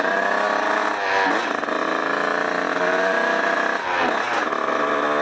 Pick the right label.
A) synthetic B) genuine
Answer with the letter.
B